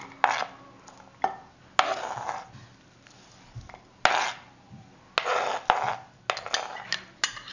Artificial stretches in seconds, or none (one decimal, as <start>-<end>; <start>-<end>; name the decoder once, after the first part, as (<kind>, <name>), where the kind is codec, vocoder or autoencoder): none